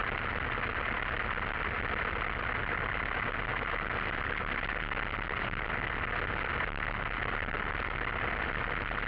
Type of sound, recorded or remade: recorded